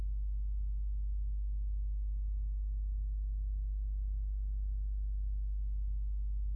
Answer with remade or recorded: recorded